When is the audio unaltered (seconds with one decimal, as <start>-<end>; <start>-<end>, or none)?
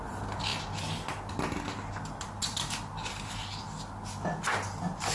0.0-5.1